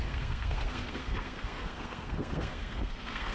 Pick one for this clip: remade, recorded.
remade